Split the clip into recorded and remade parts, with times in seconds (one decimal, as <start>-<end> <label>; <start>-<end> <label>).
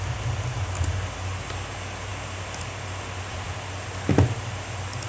0.0-5.1 recorded